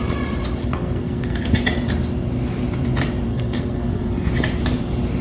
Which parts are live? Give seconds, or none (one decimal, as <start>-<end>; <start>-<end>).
0.0-0.6; 1.5-3.3; 4.3-5.2